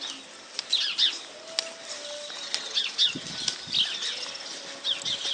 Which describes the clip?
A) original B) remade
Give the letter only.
A